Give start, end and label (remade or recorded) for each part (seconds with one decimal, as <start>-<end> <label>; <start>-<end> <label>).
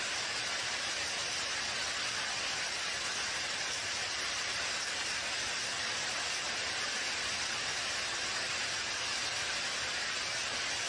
0.0-10.9 recorded